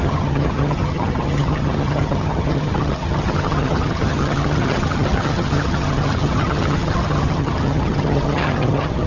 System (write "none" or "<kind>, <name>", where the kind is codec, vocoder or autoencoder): vocoder, HiFi-GAN